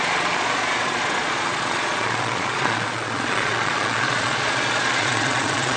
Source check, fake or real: fake